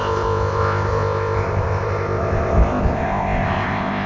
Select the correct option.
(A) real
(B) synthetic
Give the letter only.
B